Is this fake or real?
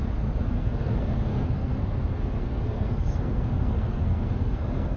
fake